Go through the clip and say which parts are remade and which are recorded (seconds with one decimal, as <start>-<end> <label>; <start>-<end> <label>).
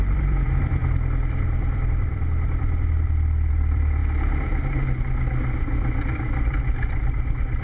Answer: 0.0-4.0 remade; 4.0-6.0 recorded; 6.0-7.6 remade